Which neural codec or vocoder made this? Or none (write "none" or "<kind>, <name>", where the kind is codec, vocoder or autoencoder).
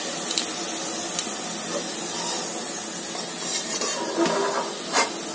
none